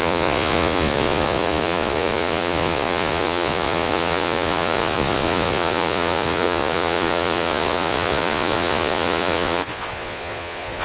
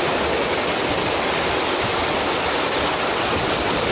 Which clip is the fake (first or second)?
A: first